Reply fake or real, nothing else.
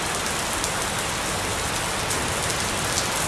real